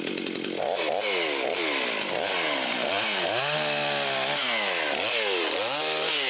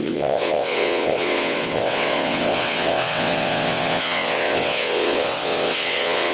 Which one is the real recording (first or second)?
first